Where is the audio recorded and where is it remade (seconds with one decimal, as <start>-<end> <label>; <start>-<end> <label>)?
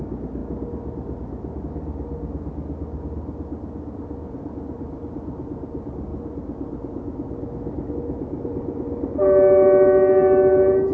0.0-10.9 recorded